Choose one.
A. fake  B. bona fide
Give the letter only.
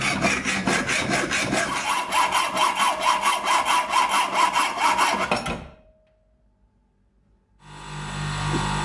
B